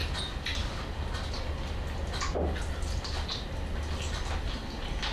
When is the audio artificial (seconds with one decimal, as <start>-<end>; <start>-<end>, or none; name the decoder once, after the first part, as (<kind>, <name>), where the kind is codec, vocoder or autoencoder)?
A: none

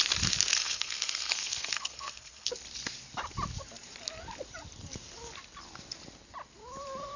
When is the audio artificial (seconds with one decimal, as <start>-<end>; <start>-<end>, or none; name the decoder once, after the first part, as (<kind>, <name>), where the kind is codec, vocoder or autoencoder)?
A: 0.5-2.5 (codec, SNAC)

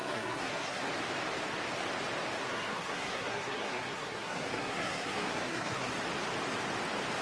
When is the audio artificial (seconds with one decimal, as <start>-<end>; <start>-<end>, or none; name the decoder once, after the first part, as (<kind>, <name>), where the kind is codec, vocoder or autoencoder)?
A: 0.0-0.9 (codec, SNAC); 2.4-5.9

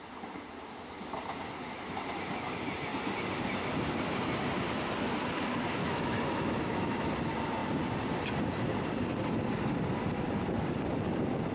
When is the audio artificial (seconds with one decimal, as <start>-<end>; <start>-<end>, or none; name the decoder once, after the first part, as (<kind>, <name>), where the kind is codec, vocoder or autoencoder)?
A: 5.8-7.1 (autoencoder, DAC-VAE)

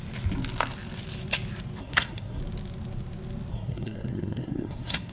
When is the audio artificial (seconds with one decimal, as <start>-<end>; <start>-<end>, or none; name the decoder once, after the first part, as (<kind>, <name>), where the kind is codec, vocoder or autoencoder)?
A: 1.8-2.4 (codec, SNAC); 3.5-5.1